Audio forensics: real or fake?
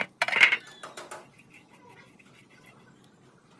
real